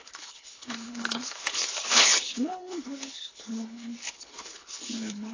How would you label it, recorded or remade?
remade